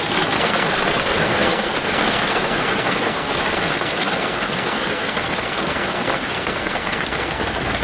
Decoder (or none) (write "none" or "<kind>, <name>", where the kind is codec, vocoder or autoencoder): codec, SNAC